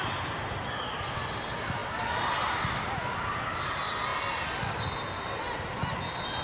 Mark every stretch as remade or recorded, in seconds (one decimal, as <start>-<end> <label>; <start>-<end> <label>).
0.0-6.4 recorded